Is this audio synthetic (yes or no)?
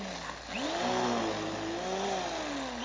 no